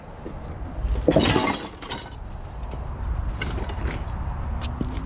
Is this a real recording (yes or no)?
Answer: yes